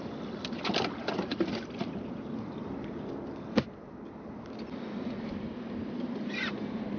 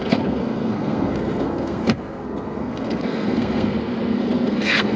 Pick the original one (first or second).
first